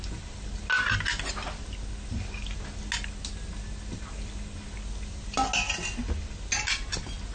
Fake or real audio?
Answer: real